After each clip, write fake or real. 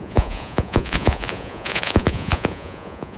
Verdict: fake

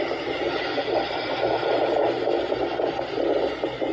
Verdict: real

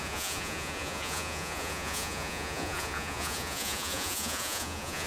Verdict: fake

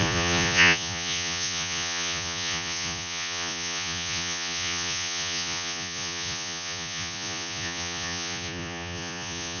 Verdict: fake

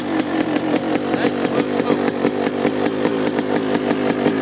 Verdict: real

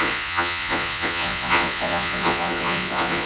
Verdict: fake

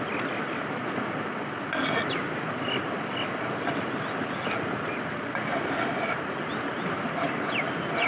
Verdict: real